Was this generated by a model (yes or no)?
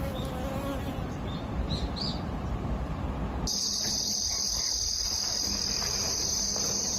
no